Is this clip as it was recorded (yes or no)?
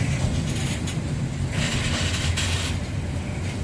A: yes